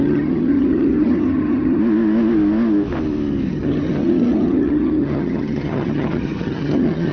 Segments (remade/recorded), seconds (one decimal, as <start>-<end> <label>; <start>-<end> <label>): 0.0-1.8 remade; 1.8-3.5 recorded; 3.5-7.1 remade